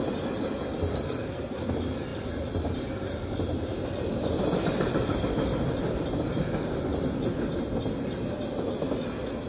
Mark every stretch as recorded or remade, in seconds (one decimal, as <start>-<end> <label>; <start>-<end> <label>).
0.0-0.9 recorded; 0.9-1.7 remade; 1.7-9.5 recorded